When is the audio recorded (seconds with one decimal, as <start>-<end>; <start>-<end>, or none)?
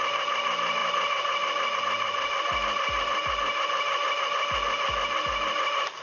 0.0-6.0